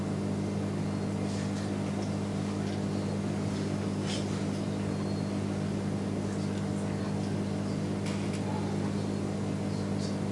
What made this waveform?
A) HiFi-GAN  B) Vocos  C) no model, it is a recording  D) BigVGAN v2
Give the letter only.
C